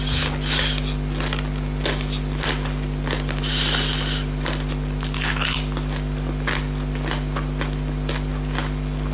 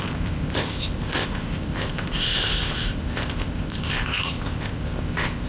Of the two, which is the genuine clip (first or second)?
first